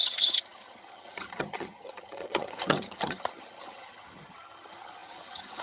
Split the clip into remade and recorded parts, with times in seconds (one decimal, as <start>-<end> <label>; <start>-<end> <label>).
0.0-5.6 remade